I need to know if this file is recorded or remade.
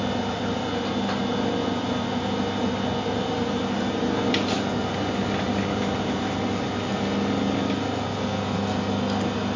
recorded